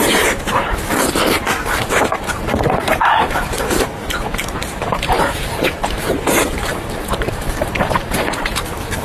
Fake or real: fake